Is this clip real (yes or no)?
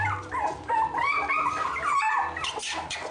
yes